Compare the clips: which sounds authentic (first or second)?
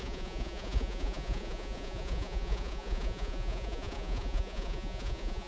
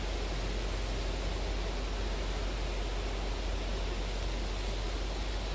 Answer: second